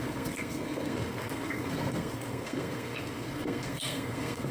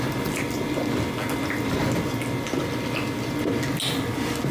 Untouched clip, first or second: second